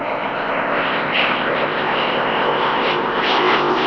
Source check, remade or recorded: remade